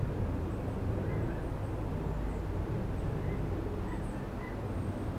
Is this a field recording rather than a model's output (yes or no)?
yes